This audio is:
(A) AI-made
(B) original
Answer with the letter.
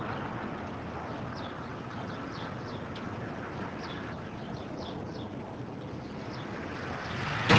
B